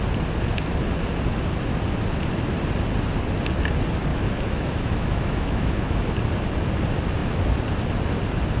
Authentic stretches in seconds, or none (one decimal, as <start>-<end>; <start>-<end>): 0.0-4.1; 6.1-8.6

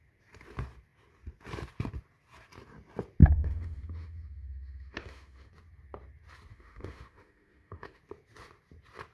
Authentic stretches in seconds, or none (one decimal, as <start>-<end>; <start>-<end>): 0.0-3.2; 5.5-6.5; 8.0-9.1

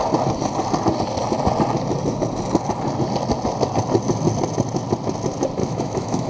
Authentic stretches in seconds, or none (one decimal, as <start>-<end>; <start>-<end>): 0.0-5.6

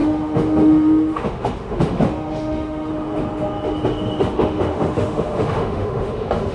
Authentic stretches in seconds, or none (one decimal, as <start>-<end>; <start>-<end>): 2.9-4.2

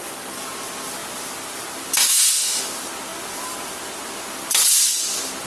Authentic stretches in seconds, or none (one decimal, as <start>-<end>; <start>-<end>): 0.0-2.0; 2.6-5.5

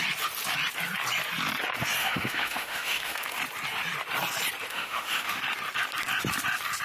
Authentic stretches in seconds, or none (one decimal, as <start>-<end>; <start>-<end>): 0.0-2.0; 3.4-4.7; 5.4-6.8